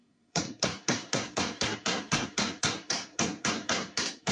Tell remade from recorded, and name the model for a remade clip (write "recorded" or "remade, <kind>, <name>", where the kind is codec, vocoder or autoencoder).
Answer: remade, codec, SNAC